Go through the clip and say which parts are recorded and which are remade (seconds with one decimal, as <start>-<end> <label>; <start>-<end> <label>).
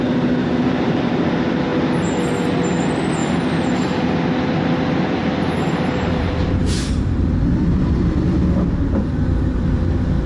0.0-0.4 recorded; 0.4-1.0 remade; 1.0-3.2 recorded; 3.2-3.9 remade; 3.9-5.2 recorded; 5.2-7.3 remade; 7.3-10.3 recorded